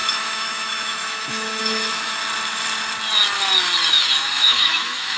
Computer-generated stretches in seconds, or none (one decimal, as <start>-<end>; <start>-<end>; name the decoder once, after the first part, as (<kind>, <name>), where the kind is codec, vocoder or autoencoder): 0.0-2.2 (autoencoder, DAC-VAE); 3.9-5.2